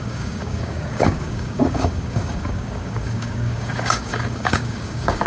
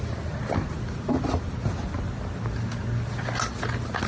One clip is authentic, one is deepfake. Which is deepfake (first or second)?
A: first